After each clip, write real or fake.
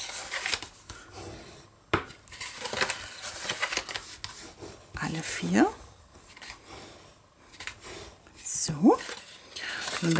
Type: real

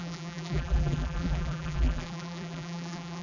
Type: fake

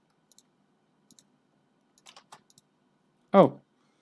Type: real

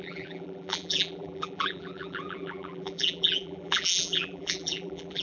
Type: fake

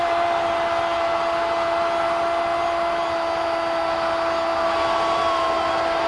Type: real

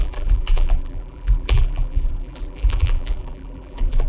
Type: fake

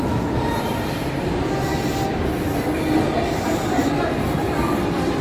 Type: real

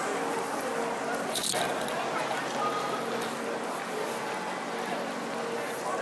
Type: real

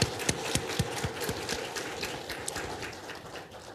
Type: real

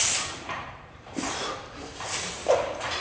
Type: fake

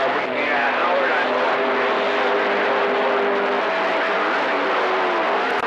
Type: real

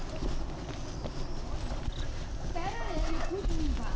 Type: real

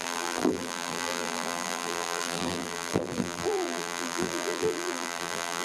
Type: fake